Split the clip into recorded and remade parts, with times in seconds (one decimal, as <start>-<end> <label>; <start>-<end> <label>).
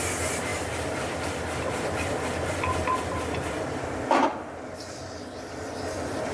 0.0-6.3 recorded